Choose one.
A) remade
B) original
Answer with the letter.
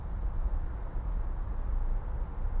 B